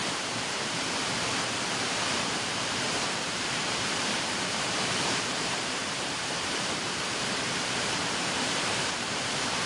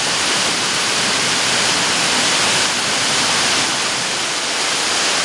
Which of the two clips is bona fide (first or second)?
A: second